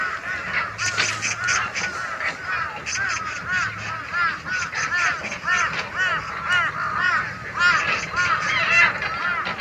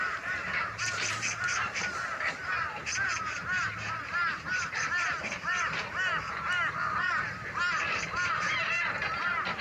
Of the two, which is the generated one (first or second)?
second